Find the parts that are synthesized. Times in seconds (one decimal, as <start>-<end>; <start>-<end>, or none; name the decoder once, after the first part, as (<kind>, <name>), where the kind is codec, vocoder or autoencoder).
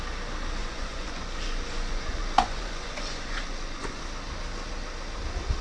0.6-4.0 (vocoder, Vocos)